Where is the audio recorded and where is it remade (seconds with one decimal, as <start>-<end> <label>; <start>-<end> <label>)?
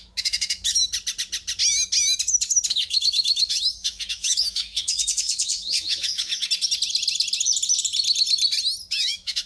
0.0-0.8 remade; 0.8-2.7 recorded; 2.7-6.3 remade; 6.3-8.9 recorded; 8.9-9.5 remade